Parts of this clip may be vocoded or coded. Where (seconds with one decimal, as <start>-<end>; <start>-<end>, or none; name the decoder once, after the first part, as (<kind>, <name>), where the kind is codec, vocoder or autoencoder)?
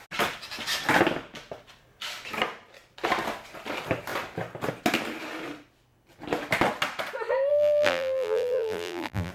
7.5-9.3 (vocoder, BigVGAN v2)